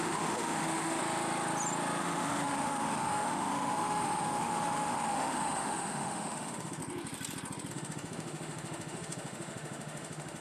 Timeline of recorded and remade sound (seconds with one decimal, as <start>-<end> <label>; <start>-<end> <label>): 0.0-1.0 remade; 1.0-2.0 recorded; 2.0-6.8 remade; 6.8-7.7 recorded; 7.7-10.4 remade